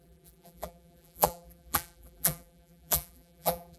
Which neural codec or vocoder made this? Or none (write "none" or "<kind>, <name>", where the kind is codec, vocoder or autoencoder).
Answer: vocoder, BigVGAN v2